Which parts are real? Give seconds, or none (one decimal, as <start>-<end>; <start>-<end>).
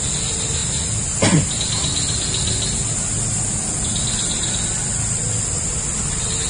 0.0-6.5